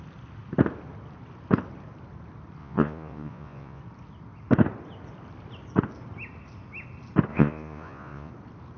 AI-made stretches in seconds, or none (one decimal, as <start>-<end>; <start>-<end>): 2.6-3.8; 7.3-8.3